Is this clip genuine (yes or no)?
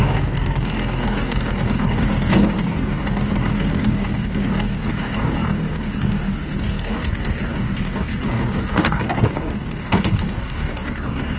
no